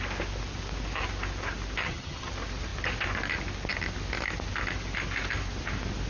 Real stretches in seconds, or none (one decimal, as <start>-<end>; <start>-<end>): 0.0-1.8; 2.3-6.1